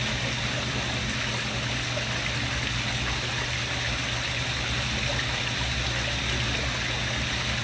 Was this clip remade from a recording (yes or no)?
no